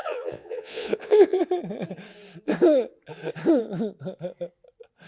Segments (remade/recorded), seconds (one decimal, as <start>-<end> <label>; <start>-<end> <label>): 0.0-1.4 remade; 1.4-5.1 recorded